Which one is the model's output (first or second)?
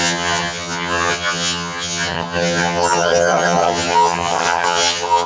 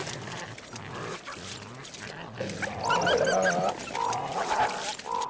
first